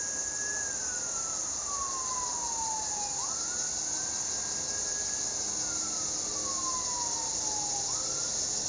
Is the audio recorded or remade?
recorded